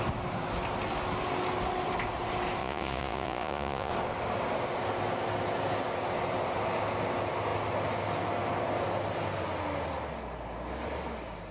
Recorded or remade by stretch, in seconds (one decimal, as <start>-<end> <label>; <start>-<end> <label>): 0.0-2.6 recorded; 2.6-3.9 remade; 3.9-11.5 recorded